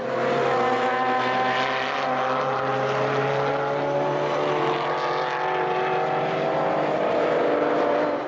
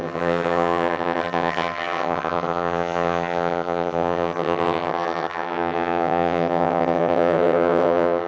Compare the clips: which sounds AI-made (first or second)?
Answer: second